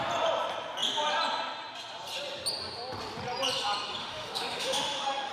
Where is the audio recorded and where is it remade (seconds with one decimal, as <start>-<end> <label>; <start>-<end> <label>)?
0.0-4.0 recorded; 4.0-5.3 remade